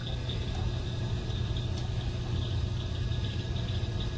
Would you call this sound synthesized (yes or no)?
no